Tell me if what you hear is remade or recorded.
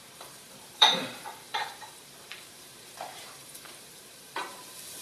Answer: remade